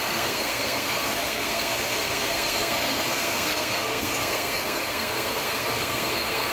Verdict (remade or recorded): remade